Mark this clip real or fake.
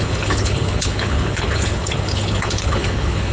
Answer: fake